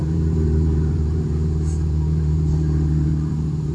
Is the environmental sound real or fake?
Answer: fake